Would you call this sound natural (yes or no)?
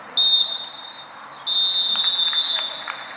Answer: yes